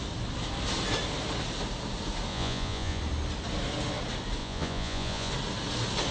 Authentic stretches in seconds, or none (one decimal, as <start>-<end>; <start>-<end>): 0.0-2.3; 3.0-4.4; 5.3-6.1